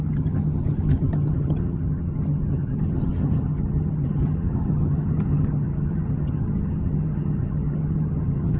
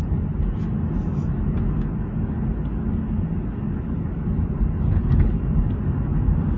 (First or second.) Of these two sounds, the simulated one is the first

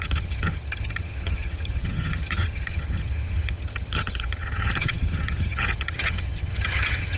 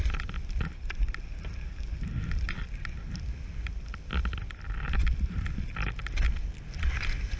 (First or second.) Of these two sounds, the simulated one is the first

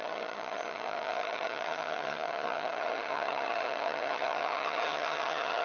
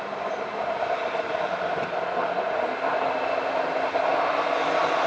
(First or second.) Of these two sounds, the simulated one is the first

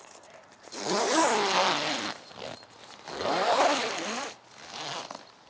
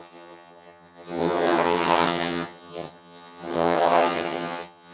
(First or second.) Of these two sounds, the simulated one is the second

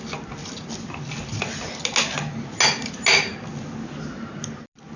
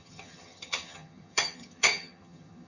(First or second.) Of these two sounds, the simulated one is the second